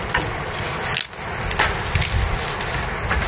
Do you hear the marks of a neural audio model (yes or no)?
no